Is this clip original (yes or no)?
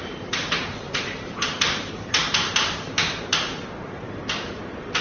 no